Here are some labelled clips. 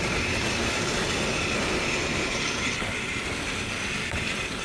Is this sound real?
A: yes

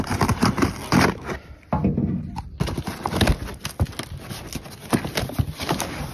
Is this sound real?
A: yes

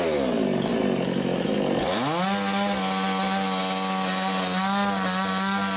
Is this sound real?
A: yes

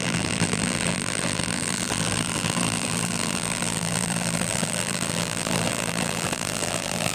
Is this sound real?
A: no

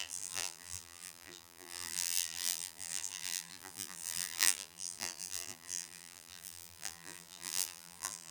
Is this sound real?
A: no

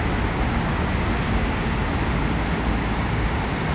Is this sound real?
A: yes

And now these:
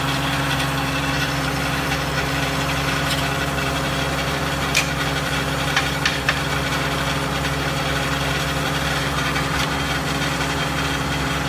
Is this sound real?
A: no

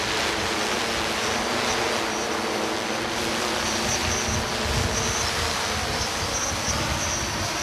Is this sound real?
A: yes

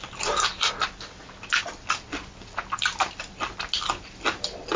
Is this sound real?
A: yes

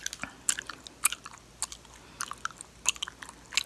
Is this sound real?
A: yes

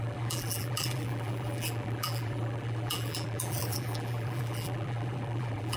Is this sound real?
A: no